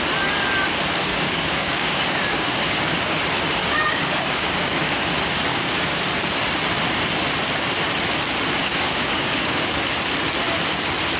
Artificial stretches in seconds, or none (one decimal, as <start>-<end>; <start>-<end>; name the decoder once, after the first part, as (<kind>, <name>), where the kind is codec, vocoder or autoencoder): 1.1-3.2 (codec, DAC); 3.6-4.9; 5.5-6.0; 8.6-9.7